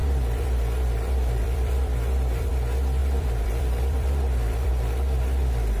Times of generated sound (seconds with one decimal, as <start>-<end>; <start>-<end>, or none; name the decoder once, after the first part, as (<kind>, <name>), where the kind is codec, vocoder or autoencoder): 0.0-2.5 (vocoder, BigVGAN v2); 3.0-4.7

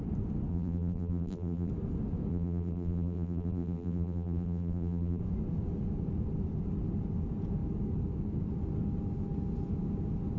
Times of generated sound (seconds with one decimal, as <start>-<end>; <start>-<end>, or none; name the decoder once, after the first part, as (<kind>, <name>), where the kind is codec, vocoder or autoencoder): 0.5-1.7 (vocoder, BigVGAN v2); 2.3-5.2

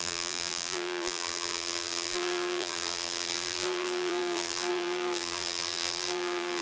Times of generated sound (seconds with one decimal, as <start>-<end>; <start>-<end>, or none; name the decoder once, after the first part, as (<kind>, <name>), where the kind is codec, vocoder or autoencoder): 0.0-6.6 (vocoder, BigVGAN v2)